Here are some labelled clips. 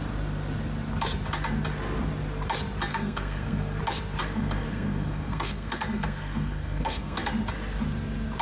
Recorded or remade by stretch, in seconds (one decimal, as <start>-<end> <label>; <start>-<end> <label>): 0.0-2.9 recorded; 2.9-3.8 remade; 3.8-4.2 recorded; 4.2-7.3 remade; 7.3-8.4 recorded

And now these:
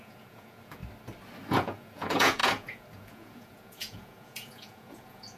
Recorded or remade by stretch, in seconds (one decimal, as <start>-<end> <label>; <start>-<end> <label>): 0.0-0.8 remade; 0.8-1.5 recorded; 1.5-5.4 remade

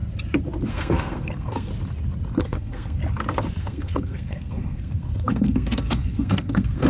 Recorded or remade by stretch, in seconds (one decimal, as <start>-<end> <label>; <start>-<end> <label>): 0.0-0.7 recorded; 0.7-1.7 remade; 1.7-2.4 recorded; 2.4-3.0 remade; 3.0-3.6 recorded; 3.6-6.9 remade

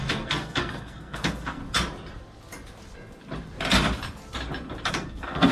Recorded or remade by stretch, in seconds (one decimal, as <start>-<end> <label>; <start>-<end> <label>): 0.0-1.6 remade; 1.6-4.9 recorded; 4.9-5.5 remade

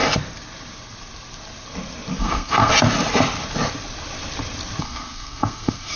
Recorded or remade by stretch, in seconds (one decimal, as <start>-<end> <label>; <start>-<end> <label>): 0.0-2.2 recorded; 2.2-2.7 remade; 2.7-4.8 recorded; 4.8-6.0 remade

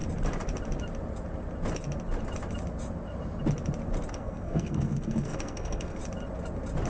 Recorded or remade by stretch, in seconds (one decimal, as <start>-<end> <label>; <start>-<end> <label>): 0.0-4.1 recorded; 4.1-6.0 remade; 6.0-6.9 recorded